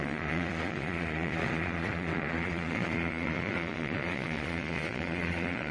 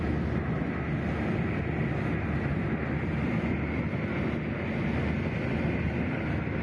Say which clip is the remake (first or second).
first